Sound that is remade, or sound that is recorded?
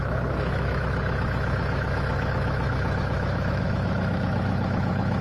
remade